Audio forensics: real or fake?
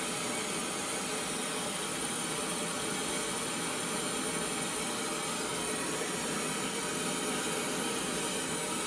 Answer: real